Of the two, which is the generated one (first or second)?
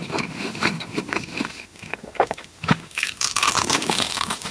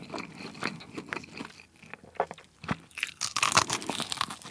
first